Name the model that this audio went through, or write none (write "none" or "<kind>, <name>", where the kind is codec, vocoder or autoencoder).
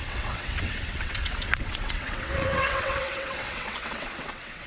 vocoder, WaveNeXt